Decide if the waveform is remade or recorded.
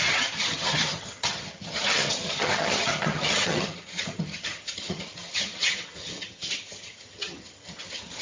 remade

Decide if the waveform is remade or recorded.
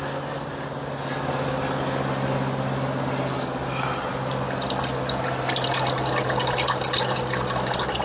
recorded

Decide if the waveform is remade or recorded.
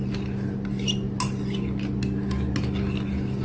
recorded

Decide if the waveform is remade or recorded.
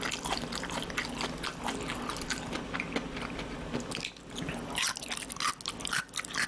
recorded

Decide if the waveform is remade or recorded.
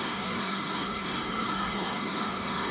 remade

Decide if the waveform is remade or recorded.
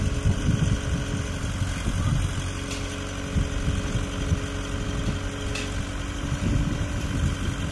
recorded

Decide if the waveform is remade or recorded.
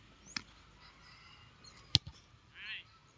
recorded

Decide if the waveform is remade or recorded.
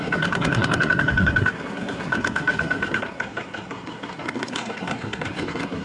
remade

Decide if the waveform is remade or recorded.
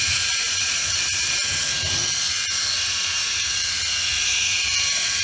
remade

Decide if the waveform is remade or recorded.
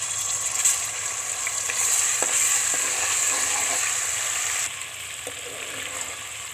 recorded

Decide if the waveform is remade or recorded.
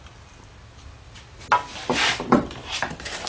recorded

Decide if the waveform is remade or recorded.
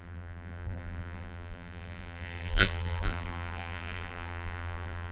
remade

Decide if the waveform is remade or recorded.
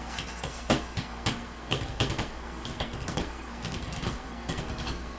remade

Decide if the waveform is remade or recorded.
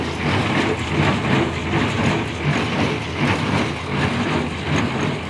recorded